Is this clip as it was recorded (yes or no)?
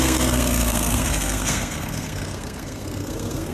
no